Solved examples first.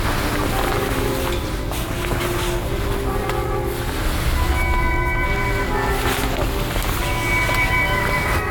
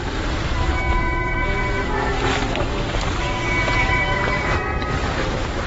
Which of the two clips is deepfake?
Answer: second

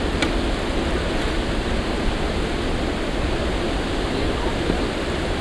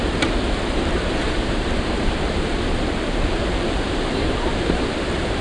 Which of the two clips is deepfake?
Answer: second